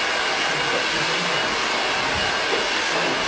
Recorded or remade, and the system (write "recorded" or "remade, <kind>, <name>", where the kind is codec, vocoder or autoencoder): recorded